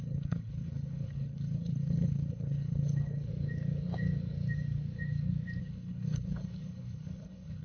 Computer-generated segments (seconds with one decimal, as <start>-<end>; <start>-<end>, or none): 0.0-3.3; 5.6-7.6